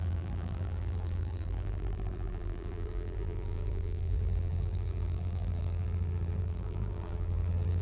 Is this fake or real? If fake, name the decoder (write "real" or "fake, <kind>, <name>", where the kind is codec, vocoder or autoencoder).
fake, vocoder, BigVGAN v2